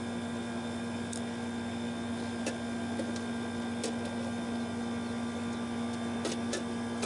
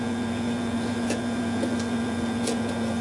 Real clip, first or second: first